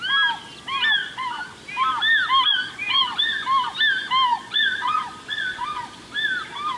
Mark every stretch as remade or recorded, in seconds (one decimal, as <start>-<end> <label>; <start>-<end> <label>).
0.0-1.0 recorded; 1.0-1.6 remade; 1.6-2.5 recorded; 2.5-3.2 remade; 3.2-4.3 recorded; 4.3-5.8 remade; 5.8-6.8 recorded